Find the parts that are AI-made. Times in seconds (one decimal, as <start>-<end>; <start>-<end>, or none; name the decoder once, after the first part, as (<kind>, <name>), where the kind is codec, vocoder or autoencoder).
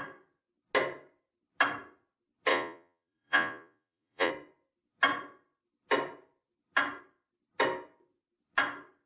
2.5-4.3 (vocoder, Vocos)